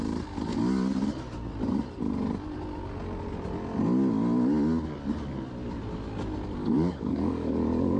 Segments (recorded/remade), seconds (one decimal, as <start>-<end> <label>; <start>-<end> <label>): 0.0-6.6 recorded; 6.6-8.0 remade